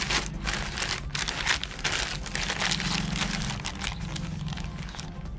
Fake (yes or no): no